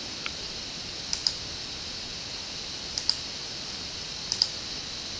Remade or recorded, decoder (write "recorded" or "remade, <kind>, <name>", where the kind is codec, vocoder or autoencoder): recorded